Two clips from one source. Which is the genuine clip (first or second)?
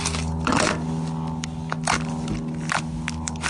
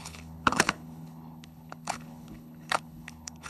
first